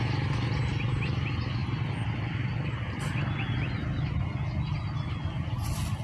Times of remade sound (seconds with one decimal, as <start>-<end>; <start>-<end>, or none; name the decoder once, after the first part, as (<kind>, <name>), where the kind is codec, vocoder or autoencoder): 1.6-3.4 (vocoder, BigVGAN v2)